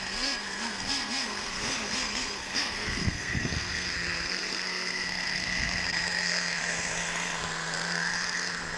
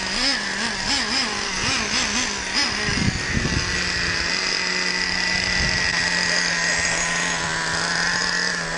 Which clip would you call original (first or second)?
second